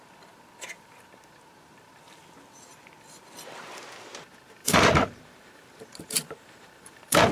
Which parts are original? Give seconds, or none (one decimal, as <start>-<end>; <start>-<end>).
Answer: 0.0-4.6